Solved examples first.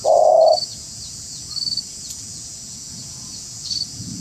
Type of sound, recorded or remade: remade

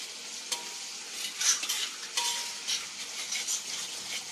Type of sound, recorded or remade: recorded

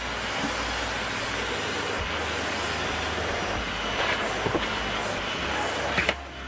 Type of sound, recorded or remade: recorded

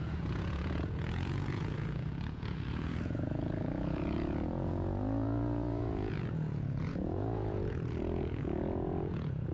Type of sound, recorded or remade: remade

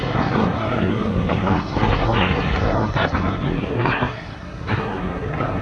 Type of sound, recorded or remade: remade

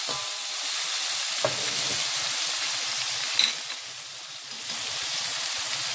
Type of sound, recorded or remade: recorded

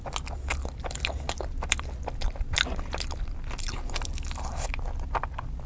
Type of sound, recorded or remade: recorded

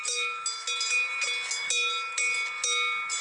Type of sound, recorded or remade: recorded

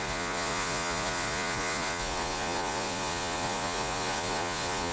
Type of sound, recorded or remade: remade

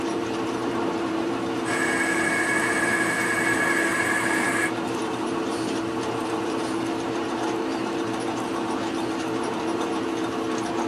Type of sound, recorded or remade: remade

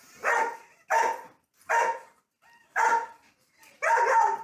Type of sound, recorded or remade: remade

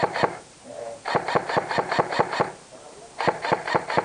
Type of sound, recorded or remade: remade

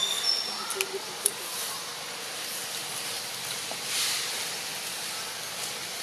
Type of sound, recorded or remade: recorded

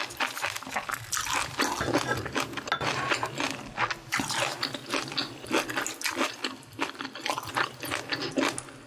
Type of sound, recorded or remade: recorded